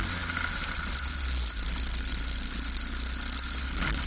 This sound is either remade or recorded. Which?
recorded